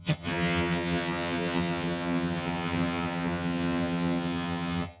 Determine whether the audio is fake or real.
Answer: fake